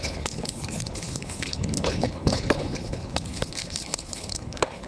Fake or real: fake